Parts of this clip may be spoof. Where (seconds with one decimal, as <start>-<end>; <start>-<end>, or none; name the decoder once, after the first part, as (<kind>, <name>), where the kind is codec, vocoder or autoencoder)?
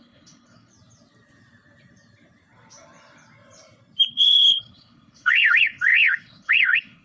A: 0.0-0.7 (codec, HILCodec); 4.1-7.0